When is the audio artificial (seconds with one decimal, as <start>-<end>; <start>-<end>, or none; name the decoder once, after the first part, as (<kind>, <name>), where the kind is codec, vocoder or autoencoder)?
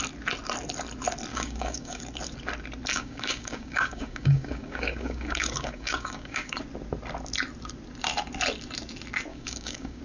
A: 1.3-2.0 (codec, DAC); 2.9-6.6; 9.3-10.0